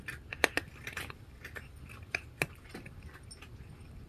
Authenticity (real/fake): real